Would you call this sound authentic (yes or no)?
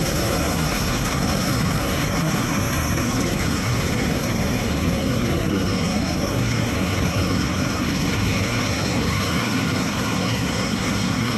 no